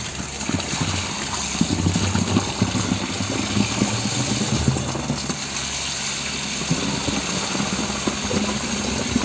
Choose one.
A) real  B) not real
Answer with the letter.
A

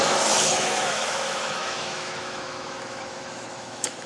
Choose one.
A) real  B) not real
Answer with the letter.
B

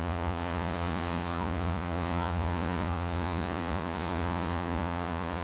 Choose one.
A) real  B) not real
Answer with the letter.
B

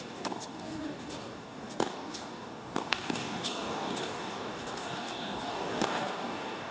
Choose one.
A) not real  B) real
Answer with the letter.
A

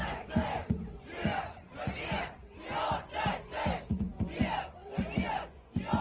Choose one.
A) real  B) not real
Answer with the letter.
B